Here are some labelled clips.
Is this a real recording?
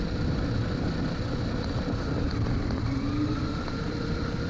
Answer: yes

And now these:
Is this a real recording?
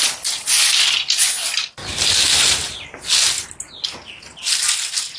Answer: yes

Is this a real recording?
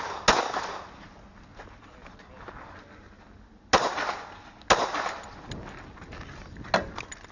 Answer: yes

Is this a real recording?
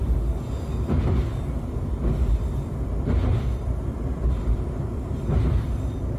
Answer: yes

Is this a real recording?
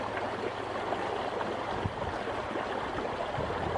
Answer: yes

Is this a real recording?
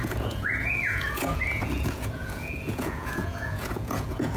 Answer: no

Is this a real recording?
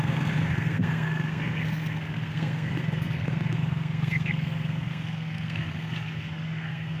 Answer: no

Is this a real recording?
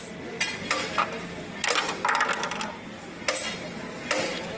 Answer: yes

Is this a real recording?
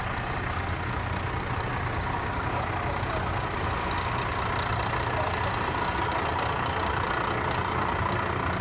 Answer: yes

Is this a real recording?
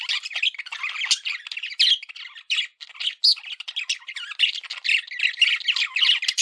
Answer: yes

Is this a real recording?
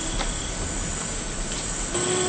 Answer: yes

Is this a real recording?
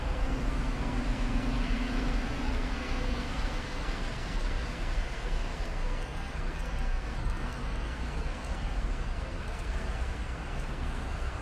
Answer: no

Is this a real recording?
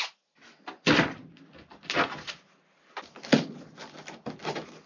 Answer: yes